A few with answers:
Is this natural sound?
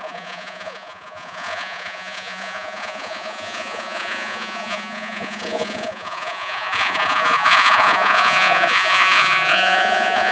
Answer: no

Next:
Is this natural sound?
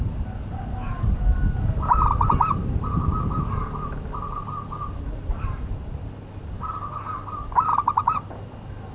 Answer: yes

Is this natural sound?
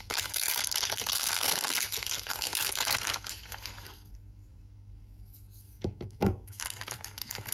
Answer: no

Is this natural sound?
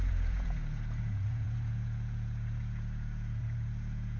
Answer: no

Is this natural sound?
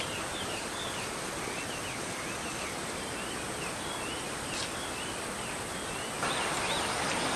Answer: yes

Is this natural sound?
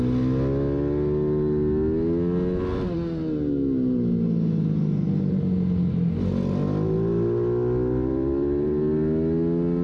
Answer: yes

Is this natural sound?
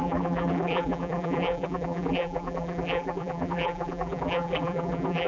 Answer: no